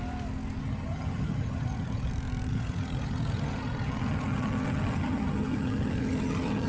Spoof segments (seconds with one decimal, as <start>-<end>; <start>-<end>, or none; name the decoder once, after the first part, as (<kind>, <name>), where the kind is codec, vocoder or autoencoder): 0.6-2.1 (vocoder, HiFi-GAN); 2.5-6.7